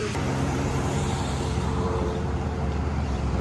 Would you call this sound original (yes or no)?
no